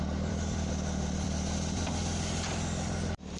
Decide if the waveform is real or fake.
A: fake